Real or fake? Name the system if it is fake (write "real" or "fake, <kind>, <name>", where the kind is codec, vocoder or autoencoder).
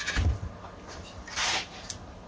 real